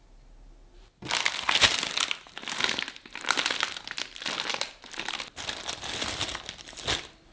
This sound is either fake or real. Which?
real